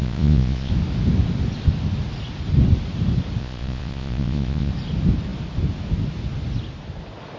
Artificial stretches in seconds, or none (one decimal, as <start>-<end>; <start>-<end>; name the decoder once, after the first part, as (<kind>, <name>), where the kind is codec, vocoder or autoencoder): 0.0-0.7 (vocoder, Vocos); 3.4-4.7